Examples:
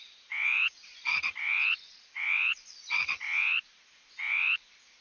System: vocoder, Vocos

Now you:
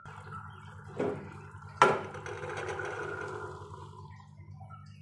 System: none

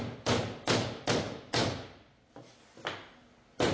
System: none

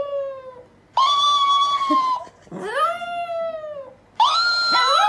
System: none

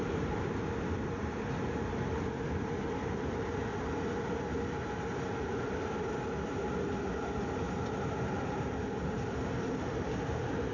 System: none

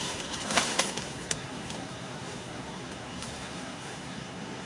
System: codec, SNAC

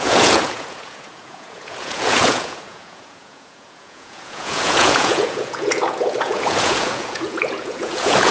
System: vocoder, Vocos